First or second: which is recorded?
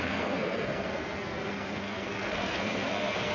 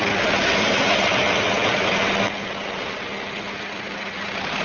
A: second